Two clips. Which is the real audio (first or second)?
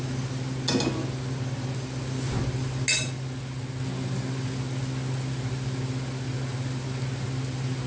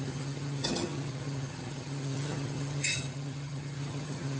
first